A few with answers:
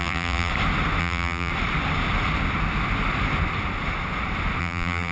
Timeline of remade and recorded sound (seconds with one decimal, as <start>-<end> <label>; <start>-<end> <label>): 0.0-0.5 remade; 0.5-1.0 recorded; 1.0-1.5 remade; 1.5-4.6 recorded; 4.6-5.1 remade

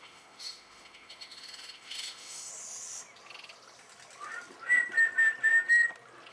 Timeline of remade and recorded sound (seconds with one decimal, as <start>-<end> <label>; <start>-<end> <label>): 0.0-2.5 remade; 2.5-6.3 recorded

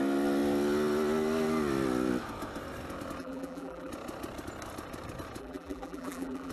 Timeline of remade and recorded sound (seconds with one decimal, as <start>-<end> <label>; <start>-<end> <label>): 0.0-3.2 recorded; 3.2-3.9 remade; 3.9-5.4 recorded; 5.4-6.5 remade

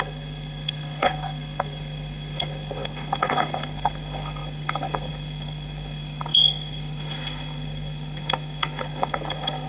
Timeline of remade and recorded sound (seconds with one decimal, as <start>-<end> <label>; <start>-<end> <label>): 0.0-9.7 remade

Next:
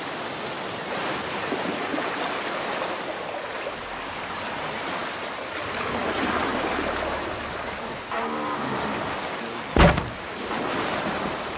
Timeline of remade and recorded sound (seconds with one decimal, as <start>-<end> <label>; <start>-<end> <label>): 0.0-11.6 recorded

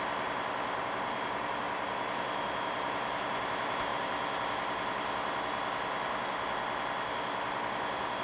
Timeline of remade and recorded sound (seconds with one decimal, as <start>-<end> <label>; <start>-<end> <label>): 0.0-8.2 recorded

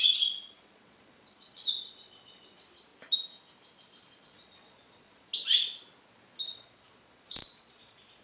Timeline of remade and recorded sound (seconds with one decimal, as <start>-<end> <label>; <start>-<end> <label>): 0.0-2.9 remade; 2.9-4.2 recorded; 4.2-5.3 remade; 5.3-6.5 recorded; 6.5-8.2 remade

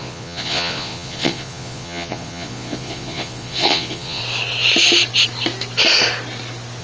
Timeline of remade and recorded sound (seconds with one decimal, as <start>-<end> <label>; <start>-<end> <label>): 0.0-4.2 remade; 4.2-6.8 recorded